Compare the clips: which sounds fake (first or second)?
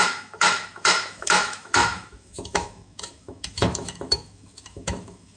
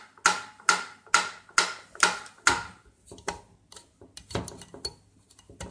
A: first